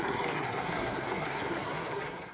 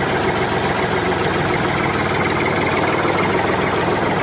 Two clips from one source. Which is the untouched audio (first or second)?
second